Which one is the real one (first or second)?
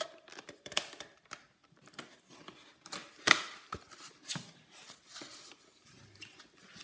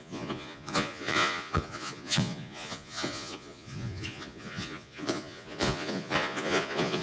first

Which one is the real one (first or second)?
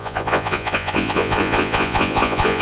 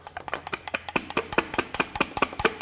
second